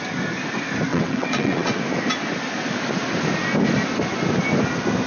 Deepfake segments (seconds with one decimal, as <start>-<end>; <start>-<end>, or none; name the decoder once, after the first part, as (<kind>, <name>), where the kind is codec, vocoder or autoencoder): 0.9-1.8 (vocoder, WaveNeXt)